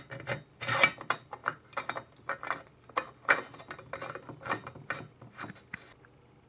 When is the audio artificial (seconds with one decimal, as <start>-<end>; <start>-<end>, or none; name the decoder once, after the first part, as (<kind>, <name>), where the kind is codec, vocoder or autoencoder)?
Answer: none